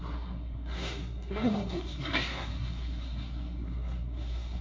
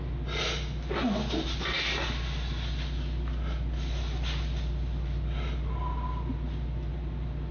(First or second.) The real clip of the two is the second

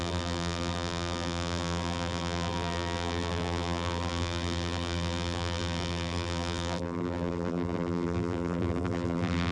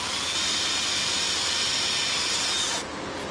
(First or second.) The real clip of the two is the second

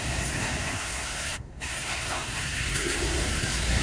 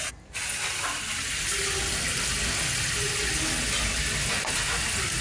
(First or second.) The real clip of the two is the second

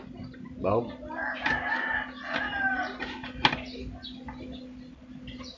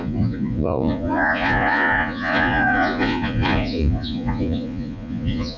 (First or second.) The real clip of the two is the first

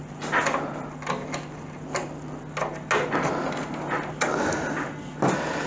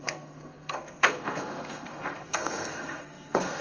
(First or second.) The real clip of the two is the first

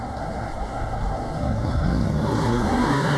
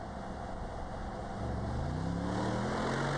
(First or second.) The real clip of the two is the second